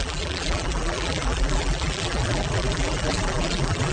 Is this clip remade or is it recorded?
remade